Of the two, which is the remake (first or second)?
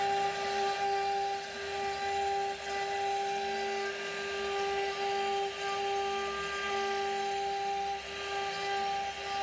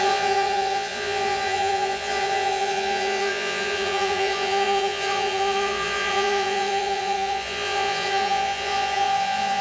second